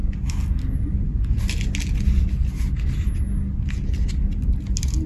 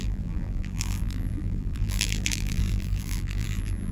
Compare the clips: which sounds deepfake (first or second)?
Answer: second